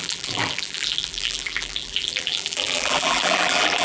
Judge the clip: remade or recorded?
remade